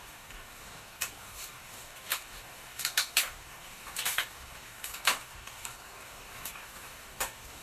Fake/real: fake